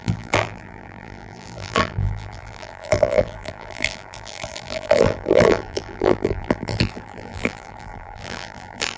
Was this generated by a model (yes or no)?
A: yes